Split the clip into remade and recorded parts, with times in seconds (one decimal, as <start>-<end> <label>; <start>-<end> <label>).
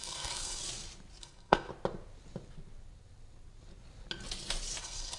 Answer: 0.0-0.6 remade; 0.6-1.2 recorded; 1.2-1.7 remade; 1.7-4.8 recorded; 4.8-5.2 remade